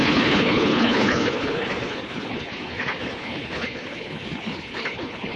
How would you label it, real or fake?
fake